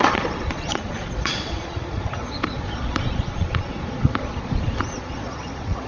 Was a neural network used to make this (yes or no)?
yes